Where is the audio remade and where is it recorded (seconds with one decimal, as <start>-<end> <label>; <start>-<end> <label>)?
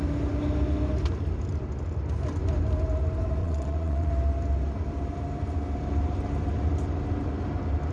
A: 0.0-3.4 recorded; 3.4-4.1 remade; 4.1-7.9 recorded